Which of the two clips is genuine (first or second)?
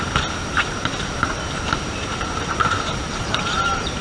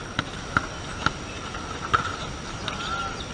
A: second